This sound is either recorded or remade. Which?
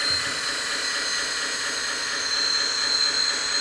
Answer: recorded